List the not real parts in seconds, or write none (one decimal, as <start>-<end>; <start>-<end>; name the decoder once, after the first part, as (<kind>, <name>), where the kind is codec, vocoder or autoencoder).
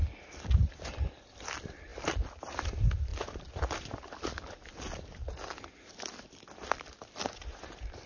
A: none